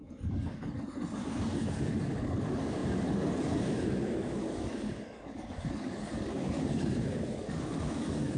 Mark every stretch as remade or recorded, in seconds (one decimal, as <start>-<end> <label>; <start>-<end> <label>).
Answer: 0.0-8.4 remade